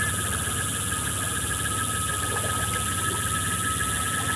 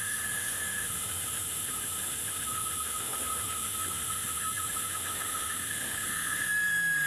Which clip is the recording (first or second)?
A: first